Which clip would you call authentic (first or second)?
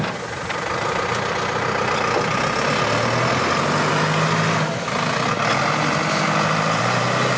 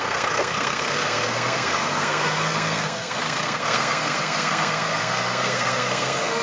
first